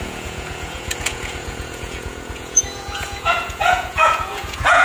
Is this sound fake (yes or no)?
yes